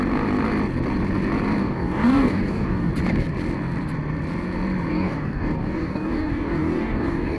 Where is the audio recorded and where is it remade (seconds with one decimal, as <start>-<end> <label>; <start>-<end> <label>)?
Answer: 0.0-1.6 recorded; 1.6-2.9 remade; 2.9-4.9 recorded; 4.9-7.4 remade